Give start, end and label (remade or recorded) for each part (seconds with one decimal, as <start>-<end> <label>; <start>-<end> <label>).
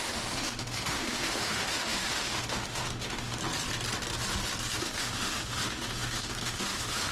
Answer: 0.0-3.4 remade; 3.4-4.8 recorded; 4.8-7.1 remade